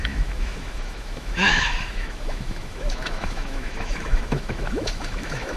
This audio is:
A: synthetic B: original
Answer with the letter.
A